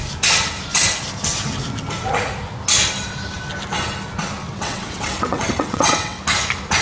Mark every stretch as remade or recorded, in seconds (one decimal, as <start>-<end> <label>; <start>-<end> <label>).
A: 0.0-4.4 recorded; 4.4-6.2 remade; 6.2-6.8 recorded